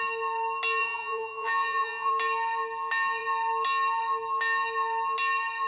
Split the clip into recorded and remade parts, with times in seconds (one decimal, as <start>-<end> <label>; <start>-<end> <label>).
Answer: 0.0-0.8 recorded; 0.8-2.1 remade; 2.1-5.7 recorded